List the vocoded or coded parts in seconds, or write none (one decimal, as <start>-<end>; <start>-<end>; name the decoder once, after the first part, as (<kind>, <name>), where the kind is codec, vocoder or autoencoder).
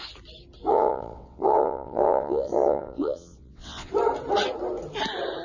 0.7-3.9 (vocoder, WaveNeXt)